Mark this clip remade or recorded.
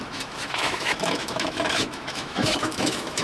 remade